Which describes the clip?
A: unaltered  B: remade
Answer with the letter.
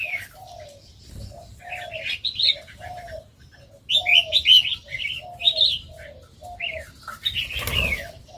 A